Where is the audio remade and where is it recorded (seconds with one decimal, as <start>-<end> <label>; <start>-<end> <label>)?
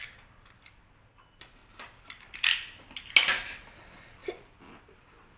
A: 0.0-5.4 recorded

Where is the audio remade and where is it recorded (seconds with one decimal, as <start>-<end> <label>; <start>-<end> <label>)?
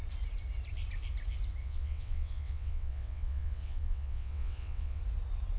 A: 0.0-1.6 recorded; 1.6-5.0 remade; 5.0-5.6 recorded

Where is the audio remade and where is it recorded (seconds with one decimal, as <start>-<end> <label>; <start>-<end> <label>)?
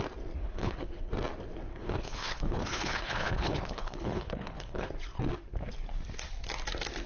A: 0.0-0.4 recorded; 0.4-1.1 remade; 1.1-1.7 recorded; 1.7-4.9 remade; 4.9-7.1 recorded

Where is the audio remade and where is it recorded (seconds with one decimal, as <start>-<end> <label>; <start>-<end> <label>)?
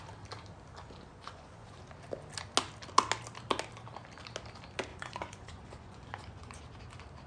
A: 0.0-1.1 recorded; 1.1-1.8 remade; 1.8-4.9 recorded; 4.9-6.6 remade; 6.6-7.3 recorded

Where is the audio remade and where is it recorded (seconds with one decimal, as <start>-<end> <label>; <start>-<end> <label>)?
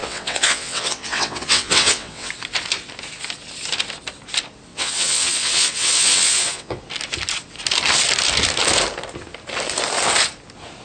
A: 0.0-2.3 remade; 2.3-4.7 recorded; 4.7-6.8 remade; 6.8-10.8 recorded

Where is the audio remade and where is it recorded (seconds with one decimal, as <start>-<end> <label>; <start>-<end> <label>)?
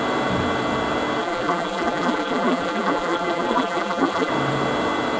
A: 0.0-1.2 recorded; 1.2-4.3 remade; 4.3-5.2 recorded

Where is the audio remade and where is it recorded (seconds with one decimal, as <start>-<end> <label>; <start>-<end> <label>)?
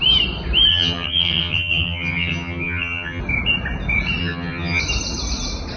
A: 0.0-0.7 recorded; 0.7-3.2 remade; 3.2-4.2 recorded; 4.2-4.8 remade; 4.8-5.8 recorded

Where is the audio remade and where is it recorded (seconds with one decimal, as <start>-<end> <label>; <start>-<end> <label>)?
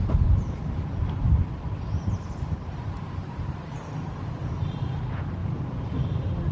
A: 0.0-5.4 recorded; 5.4-6.0 remade; 6.0-6.5 recorded